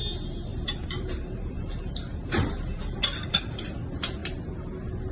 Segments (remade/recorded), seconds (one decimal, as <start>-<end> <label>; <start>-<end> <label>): 0.0-0.5 recorded; 0.5-3.6 remade; 3.6-5.1 recorded

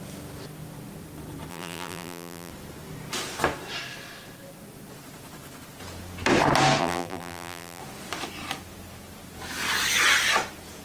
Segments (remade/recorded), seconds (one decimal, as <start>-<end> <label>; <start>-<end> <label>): 0.0-1.5 recorded; 1.5-2.5 remade; 2.5-6.8 recorded; 6.8-7.8 remade; 7.8-10.8 recorded

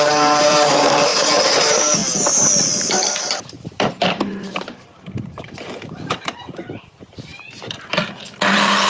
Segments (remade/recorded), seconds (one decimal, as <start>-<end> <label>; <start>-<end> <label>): 0.0-2.0 remade; 2.0-3.2 recorded; 3.2-7.3 remade; 7.3-8.5 recorded; 8.5-8.9 remade

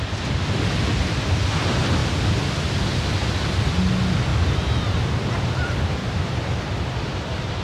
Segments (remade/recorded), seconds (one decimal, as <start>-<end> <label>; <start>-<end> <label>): 0.0-4.3 recorded; 4.3-4.8 remade; 4.8-6.0 recorded; 6.0-6.6 remade; 6.6-7.6 recorded